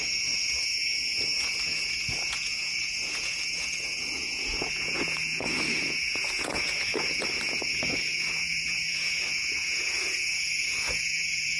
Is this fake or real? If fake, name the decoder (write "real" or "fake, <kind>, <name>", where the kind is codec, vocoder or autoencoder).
fake, vocoder, Vocos